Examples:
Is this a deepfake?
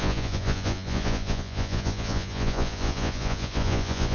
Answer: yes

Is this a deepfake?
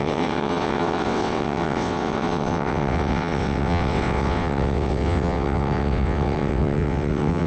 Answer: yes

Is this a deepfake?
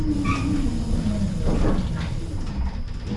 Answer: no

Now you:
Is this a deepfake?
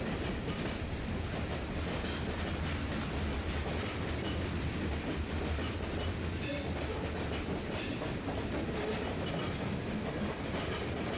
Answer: no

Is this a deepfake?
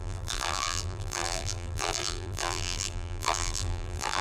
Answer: yes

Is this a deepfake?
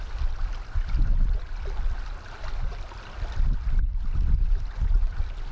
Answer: no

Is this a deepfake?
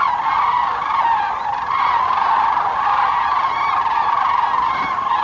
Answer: no